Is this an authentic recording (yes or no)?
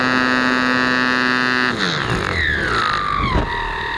yes